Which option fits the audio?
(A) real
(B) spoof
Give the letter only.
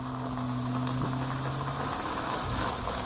A